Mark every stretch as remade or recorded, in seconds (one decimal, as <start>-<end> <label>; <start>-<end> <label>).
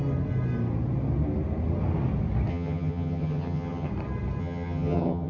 0.0-2.5 recorded; 2.5-3.9 remade; 3.9-4.4 recorded; 4.4-5.3 remade